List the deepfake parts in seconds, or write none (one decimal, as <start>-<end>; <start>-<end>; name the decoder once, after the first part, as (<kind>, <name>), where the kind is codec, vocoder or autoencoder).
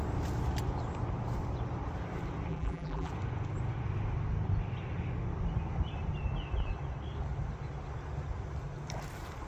2.5-3.1 (vocoder, BigVGAN v2)